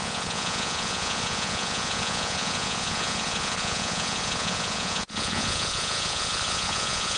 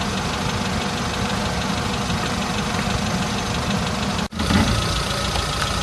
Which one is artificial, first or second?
first